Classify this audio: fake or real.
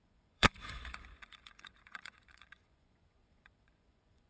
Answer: fake